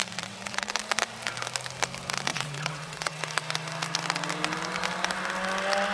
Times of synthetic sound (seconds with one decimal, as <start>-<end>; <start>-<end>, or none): 0.0-0.7; 2.3-3.2